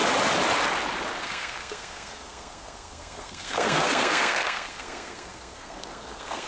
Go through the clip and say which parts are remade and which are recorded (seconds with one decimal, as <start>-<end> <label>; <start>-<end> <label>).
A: 0.0-1.2 recorded; 1.2-6.5 remade